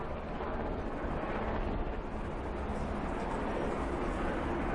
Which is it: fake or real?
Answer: real